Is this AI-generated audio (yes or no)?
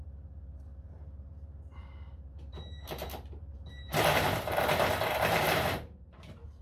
yes